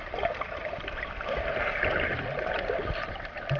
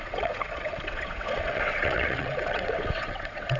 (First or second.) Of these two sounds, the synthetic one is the second